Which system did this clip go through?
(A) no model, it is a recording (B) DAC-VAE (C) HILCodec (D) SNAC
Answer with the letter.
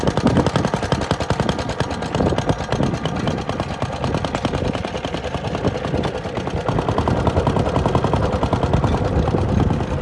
A